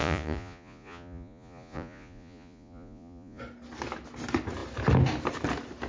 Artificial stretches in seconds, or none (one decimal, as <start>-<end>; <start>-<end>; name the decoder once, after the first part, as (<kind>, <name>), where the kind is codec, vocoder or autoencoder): 0.0-3.4 (vocoder, Vocos)